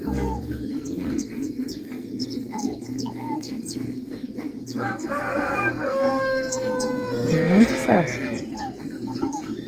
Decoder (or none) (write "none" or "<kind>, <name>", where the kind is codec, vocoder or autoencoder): codec, SNAC